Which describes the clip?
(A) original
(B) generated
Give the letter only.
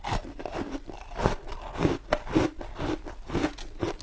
A